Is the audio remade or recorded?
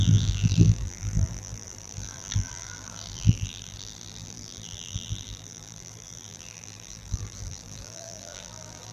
remade